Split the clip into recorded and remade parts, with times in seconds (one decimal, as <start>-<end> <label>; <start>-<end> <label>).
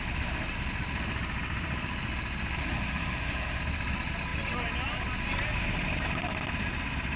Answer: 0.0-2.6 recorded; 2.6-3.6 remade; 3.6-7.2 recorded